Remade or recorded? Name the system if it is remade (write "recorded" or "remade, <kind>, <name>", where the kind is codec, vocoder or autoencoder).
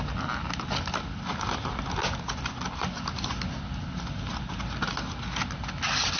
recorded